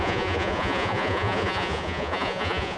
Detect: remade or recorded remade